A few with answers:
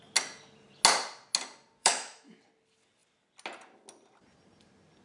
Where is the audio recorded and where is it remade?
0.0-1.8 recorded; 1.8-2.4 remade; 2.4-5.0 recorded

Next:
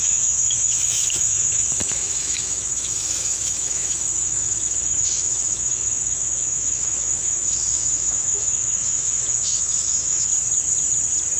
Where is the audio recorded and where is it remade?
0.0-10.3 remade; 10.3-11.4 recorded

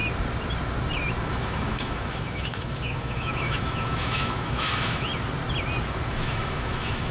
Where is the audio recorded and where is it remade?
0.0-1.3 recorded; 1.3-5.1 remade; 5.1-6.1 recorded; 6.1-7.1 remade

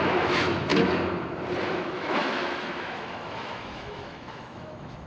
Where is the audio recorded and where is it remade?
0.0-0.7 remade; 0.7-1.7 recorded; 1.7-5.1 remade

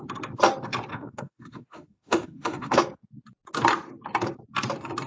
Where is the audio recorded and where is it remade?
0.0-0.9 recorded; 0.9-2.8 remade; 2.8-5.1 recorded

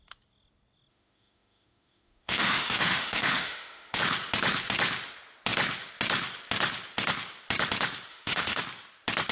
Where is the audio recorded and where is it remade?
0.0-0.9 recorded; 0.9-4.0 remade; 4.0-8.1 recorded; 8.1-8.6 remade; 8.6-9.3 recorded